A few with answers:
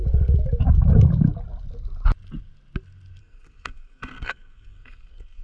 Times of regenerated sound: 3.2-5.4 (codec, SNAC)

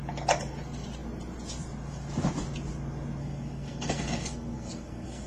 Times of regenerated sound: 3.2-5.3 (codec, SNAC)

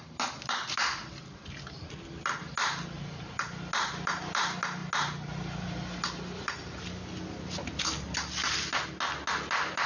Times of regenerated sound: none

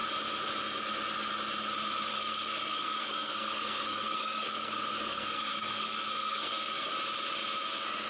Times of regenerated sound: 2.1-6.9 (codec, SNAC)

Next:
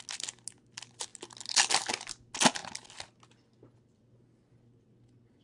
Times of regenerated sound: none

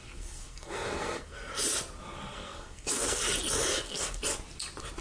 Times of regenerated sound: 0.0-1.5 (codec, SNAC); 2.3-3.2; 3.7-4.2